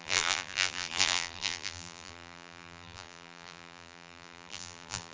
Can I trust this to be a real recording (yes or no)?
no